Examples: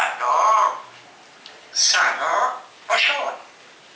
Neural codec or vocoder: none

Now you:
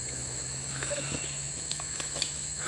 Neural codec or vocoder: autoencoder, DAC-VAE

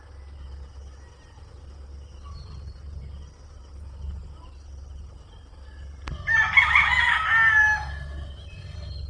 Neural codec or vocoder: none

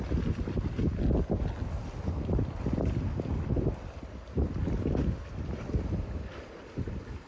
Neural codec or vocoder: none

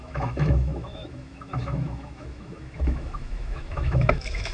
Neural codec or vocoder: autoencoder, DAC-VAE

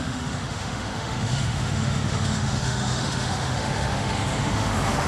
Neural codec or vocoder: autoencoder, DAC-VAE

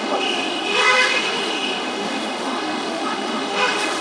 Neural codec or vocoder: autoencoder, DAC-VAE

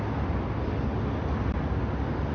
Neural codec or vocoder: none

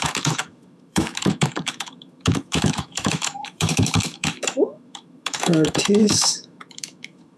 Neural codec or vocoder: autoencoder, DAC-VAE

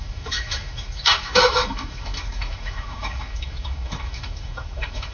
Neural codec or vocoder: autoencoder, DAC-VAE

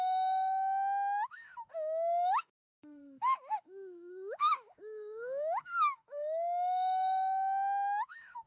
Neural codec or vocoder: autoencoder, DAC-VAE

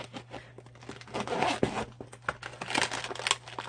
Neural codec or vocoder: none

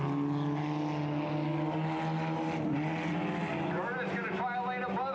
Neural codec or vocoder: none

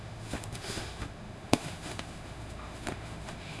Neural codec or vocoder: autoencoder, DAC-VAE